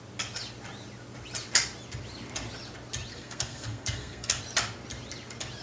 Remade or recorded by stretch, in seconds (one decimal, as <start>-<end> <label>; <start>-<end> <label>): 0.0-3.1 recorded; 3.1-4.4 remade; 4.4-5.6 recorded